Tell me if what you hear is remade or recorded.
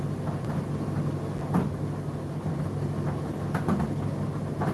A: recorded